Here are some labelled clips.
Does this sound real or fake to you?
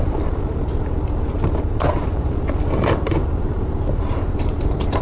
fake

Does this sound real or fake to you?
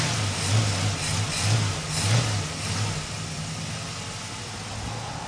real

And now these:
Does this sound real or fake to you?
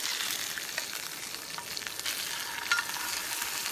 real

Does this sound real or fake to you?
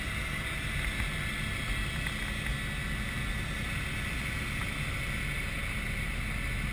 real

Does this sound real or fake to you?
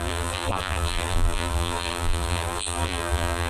fake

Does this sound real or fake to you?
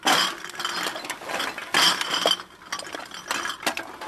real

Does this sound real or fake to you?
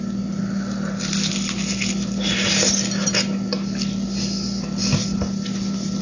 real